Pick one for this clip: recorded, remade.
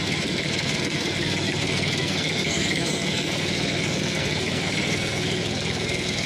remade